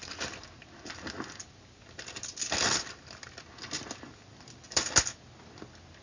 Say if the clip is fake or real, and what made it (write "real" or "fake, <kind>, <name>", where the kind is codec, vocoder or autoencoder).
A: real